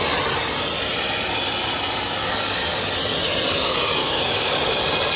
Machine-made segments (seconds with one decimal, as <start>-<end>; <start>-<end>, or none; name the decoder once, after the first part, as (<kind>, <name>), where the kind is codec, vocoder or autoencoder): 2.2-2.9 (codec, DAC); 4.0-4.8